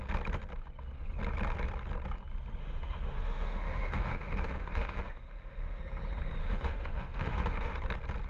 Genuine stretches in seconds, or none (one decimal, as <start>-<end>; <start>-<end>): 0.0-2.6; 5.8-6.4; 7.8-8.3